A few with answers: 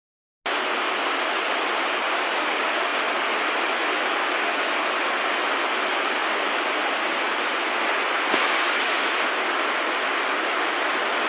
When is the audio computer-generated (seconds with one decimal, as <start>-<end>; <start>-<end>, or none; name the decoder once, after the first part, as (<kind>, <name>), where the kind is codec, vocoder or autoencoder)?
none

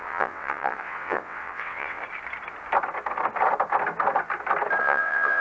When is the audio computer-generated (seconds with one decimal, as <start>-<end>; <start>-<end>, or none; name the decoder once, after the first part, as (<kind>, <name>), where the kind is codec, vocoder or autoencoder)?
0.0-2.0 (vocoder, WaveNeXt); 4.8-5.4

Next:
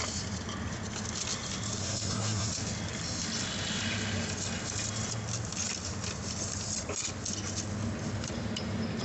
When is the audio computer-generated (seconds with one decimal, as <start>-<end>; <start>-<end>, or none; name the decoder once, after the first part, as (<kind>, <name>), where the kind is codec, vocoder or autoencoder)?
1.8-2.5 (codec, SNAC)

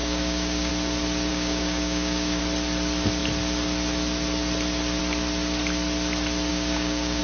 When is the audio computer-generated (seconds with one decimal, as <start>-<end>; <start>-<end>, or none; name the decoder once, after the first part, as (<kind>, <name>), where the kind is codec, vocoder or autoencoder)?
0.0-0.7 (codec, DAC); 1.3-2.4; 6.5-7.2

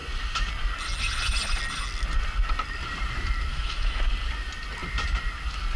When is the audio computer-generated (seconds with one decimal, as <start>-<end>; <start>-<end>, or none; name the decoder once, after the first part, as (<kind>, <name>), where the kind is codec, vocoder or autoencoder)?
3.5-4.0 (autoencoder, DAC-VAE)

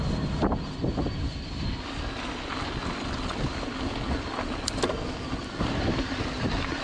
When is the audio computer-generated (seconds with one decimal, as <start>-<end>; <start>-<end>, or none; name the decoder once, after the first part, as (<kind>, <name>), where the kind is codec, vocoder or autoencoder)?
none

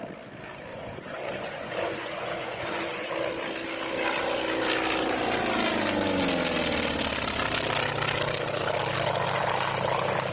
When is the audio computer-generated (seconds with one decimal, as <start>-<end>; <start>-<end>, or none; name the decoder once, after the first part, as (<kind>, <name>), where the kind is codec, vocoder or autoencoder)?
0.7-3.1 (vocoder, Vocos)

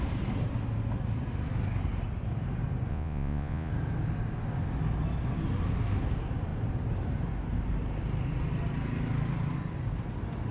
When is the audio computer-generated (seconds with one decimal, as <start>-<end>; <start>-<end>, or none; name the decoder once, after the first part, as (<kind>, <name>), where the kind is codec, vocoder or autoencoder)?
2.9-3.7 (vocoder, Vocos)